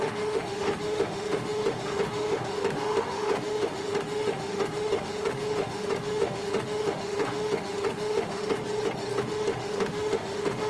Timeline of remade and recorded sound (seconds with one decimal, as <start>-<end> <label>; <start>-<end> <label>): 0.0-8.6 remade; 8.6-9.2 recorded; 9.2-10.7 remade